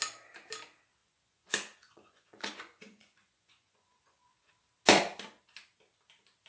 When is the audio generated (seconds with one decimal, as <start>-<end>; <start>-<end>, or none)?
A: 1.0-4.5